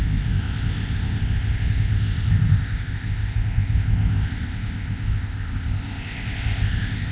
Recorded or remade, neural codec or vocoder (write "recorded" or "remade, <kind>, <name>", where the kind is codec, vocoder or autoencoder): remade, codec, ZipCodec